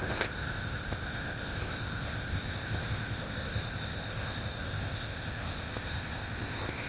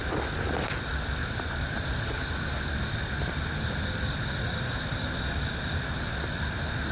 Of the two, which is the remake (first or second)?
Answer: first